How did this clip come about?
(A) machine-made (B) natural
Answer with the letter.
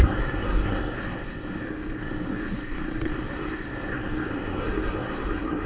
A